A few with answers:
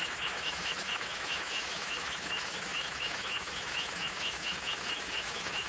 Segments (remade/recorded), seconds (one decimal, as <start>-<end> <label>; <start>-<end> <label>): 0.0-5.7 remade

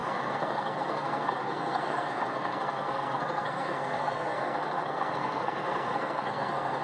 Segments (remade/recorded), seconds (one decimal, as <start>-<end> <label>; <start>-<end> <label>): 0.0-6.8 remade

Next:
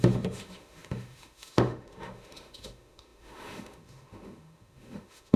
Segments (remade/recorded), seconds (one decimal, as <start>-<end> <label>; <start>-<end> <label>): 0.0-5.4 remade

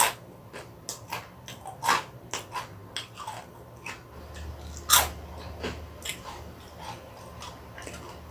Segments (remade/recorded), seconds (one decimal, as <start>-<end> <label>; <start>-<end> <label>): 0.0-6.1 recorded; 6.1-6.8 remade; 6.8-8.3 recorded